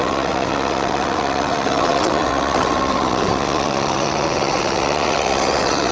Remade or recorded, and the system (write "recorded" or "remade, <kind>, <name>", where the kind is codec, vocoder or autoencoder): remade, vocoder, WaveNeXt